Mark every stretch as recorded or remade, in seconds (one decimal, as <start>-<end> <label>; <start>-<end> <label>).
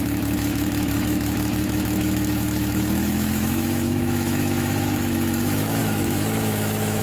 0.0-7.0 remade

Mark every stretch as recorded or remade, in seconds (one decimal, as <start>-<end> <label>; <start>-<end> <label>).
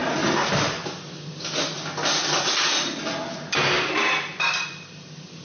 0.0-5.4 recorded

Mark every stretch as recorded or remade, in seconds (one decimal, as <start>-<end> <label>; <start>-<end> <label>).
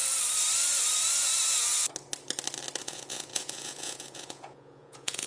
0.0-2.8 recorded; 2.8-5.3 remade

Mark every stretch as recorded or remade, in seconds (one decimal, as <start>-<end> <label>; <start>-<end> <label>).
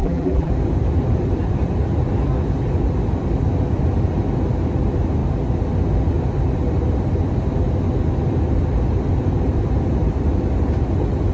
0.0-0.5 remade; 0.5-11.3 recorded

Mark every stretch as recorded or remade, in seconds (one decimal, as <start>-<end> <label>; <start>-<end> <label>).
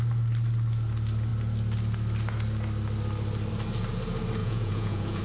0.0-4.4 recorded; 4.4-5.2 remade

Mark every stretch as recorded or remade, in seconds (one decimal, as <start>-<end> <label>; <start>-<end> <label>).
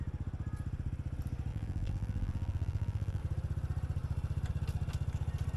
0.0-1.5 recorded; 1.5-3.2 remade; 3.2-5.6 recorded